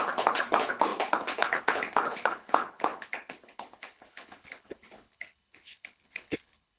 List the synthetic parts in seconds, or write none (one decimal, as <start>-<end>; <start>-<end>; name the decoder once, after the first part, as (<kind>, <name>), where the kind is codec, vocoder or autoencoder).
0.0-6.8 (codec, HILCodec)

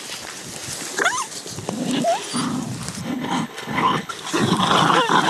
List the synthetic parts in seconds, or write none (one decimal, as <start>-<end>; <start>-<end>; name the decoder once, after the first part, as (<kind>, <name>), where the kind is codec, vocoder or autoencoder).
3.0-4.1 (codec, HILCodec)

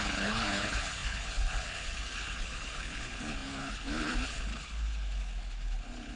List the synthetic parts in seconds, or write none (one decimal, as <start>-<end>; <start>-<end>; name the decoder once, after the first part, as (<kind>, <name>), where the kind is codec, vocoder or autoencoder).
0.0-6.2 (codec, HILCodec)

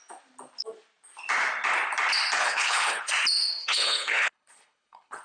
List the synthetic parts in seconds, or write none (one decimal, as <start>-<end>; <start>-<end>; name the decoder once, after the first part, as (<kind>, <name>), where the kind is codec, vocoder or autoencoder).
2.4-3.1 (codec, HILCodec); 3.6-5.2

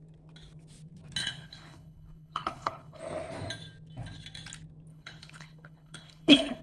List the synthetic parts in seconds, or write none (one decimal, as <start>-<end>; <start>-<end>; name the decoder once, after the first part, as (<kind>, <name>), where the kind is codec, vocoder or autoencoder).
1.2-3.0 (codec, HILCodec); 4.9-6.6

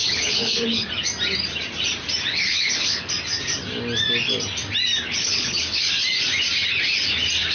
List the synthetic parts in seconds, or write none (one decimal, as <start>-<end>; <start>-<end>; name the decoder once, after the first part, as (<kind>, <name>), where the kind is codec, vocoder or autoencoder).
0.0-0.9 (codec, HILCodec); 2.3-3.1; 5.2-5.9